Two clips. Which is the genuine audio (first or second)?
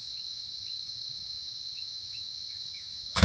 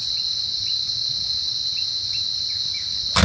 second